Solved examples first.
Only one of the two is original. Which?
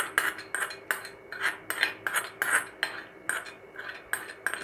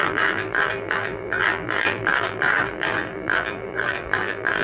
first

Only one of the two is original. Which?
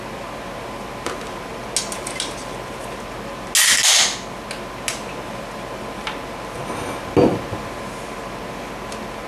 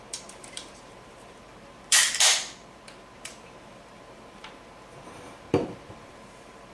first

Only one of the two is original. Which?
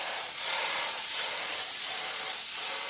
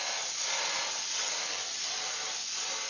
second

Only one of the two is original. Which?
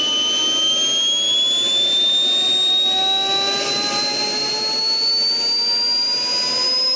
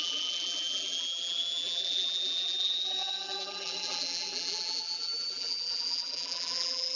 first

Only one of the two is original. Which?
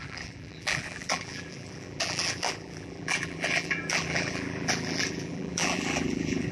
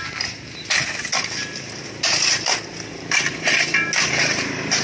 second